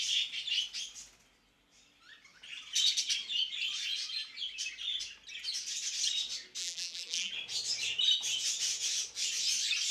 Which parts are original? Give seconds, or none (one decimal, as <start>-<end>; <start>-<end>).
0.0-6.6; 7.3-9.9